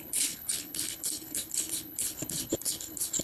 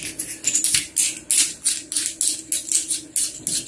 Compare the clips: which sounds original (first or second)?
second